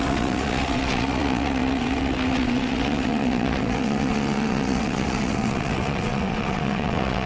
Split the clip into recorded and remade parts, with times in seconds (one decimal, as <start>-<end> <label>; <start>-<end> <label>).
0.0-7.3 remade